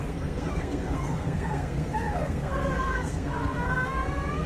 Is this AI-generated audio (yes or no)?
yes